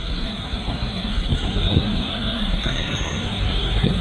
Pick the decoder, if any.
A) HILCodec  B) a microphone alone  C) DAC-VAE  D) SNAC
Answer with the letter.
D